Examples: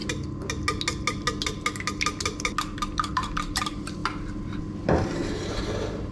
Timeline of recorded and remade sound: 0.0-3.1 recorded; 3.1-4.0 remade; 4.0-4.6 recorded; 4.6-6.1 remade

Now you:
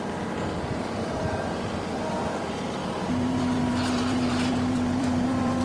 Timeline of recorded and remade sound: 0.0-5.6 remade

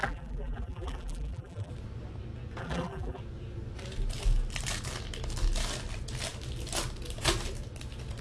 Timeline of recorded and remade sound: 0.0-1.7 remade; 1.7-2.6 recorded; 2.6-3.2 remade; 3.2-8.2 recorded